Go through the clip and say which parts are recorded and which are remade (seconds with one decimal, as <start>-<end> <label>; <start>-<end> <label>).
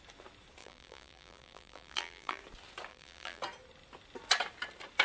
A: 0.0-0.6 recorded; 0.6-2.4 remade; 2.4-2.9 recorded; 2.9-3.4 remade; 3.4-5.0 recorded